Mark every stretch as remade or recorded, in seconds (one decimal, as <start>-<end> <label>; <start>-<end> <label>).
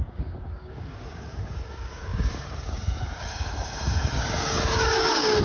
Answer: 0.0-5.4 remade